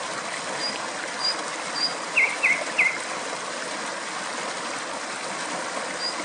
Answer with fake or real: real